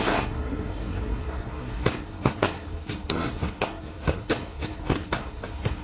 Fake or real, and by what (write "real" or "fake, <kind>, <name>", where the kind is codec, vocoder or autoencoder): fake, codec, SNAC